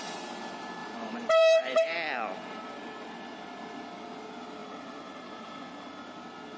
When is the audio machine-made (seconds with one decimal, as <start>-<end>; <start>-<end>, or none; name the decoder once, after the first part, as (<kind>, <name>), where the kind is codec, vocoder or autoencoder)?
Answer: 0.8-2.6 (vocoder, BigVGAN v2); 4.6-5.6